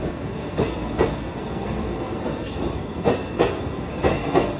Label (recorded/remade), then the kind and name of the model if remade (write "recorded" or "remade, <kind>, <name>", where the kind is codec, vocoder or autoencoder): remade, codec, SNAC